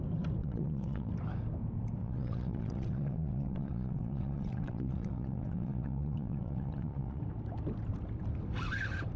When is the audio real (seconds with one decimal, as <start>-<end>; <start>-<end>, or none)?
0.0-0.4; 1.1-2.0; 7.2-9.2